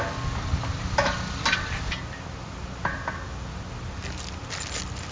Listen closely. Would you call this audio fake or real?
real